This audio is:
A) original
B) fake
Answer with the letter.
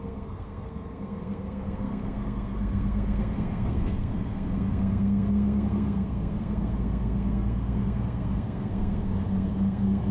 B